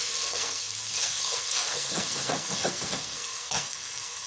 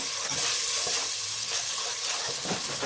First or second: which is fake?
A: first